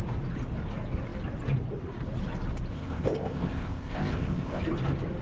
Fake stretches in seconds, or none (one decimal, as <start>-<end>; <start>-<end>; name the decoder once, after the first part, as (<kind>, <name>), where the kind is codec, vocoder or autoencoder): 2.7-4.6 (codec, ZipCodec)